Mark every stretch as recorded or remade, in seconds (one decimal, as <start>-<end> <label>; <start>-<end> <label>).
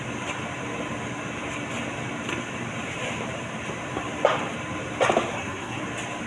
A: 0.0-5.3 recorded; 5.3-5.8 remade; 5.8-6.3 recorded